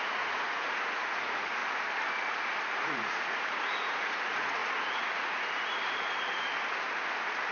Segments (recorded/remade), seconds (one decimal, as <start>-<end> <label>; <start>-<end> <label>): 0.0-1.6 remade; 1.6-2.6 recorded; 2.6-6.5 remade; 6.5-7.5 recorded